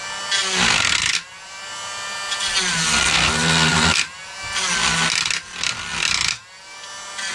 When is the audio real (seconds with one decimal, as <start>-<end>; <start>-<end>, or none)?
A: 0.0-7.3